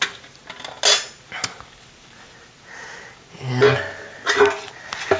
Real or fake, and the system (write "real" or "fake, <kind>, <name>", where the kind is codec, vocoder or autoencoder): real